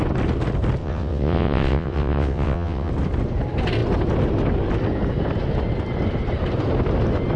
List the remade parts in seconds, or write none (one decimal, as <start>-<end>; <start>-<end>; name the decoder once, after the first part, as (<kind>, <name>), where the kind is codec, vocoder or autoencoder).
0.8-2.9 (vocoder, WaveNeXt)